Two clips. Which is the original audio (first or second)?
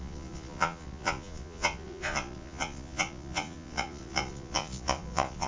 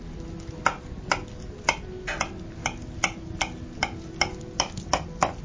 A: second